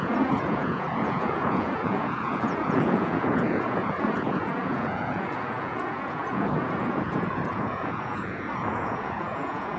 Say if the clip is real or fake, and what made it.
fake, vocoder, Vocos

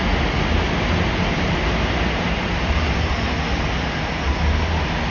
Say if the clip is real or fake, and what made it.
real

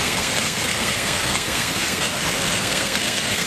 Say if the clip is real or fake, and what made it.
fake, codec, SNAC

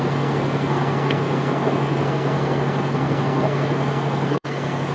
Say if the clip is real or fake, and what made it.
fake, codec, SNAC